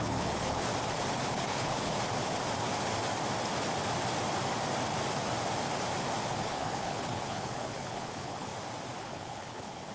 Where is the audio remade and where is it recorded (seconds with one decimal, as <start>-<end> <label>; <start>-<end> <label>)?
0.0-0.7 remade; 0.7-1.3 recorded; 1.3-1.9 remade; 1.9-6.3 recorded; 6.3-8.5 remade; 8.5-9.0 recorded; 9.0-9.9 remade